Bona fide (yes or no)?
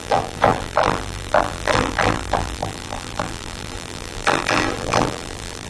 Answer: no